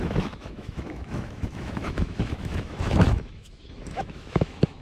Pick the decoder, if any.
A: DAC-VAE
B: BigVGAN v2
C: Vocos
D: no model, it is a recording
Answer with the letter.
A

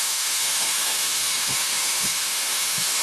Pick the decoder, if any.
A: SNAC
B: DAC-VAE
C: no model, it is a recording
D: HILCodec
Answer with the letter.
B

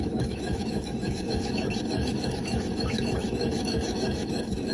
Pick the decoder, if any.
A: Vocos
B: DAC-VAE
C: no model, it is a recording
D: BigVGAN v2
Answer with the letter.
B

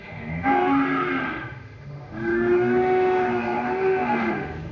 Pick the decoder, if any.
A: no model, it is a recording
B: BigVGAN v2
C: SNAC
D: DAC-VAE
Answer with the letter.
D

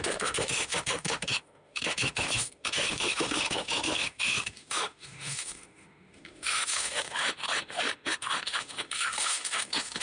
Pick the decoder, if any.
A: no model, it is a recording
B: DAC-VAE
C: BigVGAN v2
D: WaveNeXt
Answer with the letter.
B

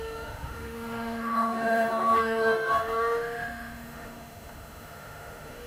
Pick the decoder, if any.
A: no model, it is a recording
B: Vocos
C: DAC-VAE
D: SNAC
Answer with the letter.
C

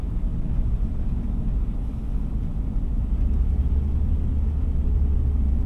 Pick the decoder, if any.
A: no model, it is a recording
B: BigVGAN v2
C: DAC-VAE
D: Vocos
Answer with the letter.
A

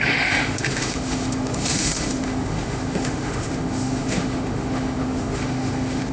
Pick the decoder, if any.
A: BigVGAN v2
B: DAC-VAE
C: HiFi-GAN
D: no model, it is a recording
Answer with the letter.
B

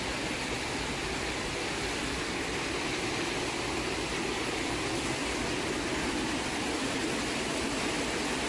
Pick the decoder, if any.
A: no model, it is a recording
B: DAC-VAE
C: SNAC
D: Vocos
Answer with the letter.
A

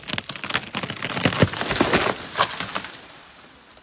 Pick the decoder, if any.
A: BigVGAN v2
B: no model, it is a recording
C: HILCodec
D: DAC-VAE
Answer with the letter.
B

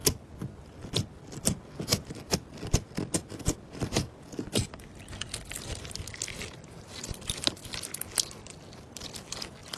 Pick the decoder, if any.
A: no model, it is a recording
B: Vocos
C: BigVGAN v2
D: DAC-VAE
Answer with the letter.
A